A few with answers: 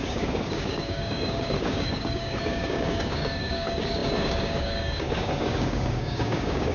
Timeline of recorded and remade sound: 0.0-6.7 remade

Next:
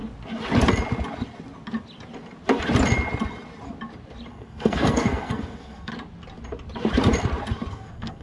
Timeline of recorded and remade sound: 0.0-4.3 recorded; 4.3-5.9 remade; 5.9-7.7 recorded; 7.7-8.2 remade

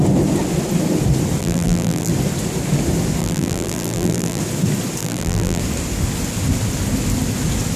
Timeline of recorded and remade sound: 0.0-1.4 recorded; 1.4-2.1 remade; 2.1-3.2 recorded; 3.2-4.4 remade; 4.4-5.0 recorded; 5.0-5.6 remade; 5.6-7.8 recorded

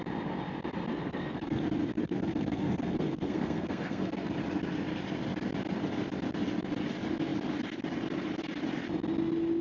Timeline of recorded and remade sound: 0.0-0.9 recorded; 0.9-1.6 remade; 1.6-2.0 recorded; 2.0-4.3 remade; 4.3-9.6 recorded